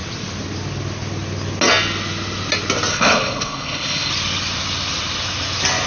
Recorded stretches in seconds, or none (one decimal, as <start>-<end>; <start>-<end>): 0.0-2.9; 4.1-5.9